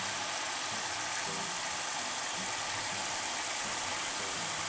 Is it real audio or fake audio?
fake